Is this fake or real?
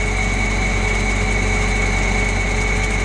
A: real